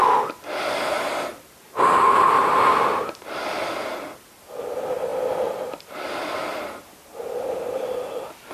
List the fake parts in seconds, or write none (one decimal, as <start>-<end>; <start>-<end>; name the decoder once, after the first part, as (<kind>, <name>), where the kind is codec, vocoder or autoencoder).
2.4-3.4 (vocoder, BigVGAN v2)